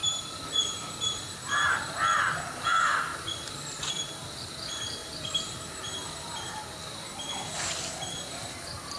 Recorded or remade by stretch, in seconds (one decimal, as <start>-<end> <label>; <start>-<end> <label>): 0.0-1.8 remade; 1.8-3.1 recorded; 3.1-3.9 remade; 3.9-5.0 recorded; 5.0-6.6 remade; 6.6-9.0 recorded